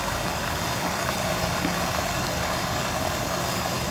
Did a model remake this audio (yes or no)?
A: yes